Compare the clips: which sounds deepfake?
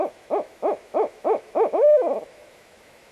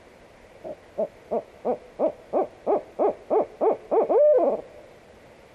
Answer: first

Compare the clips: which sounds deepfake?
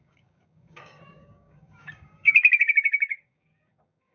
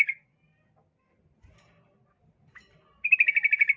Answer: first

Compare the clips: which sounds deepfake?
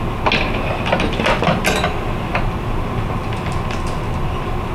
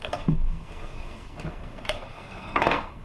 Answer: second